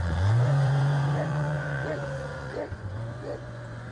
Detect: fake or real fake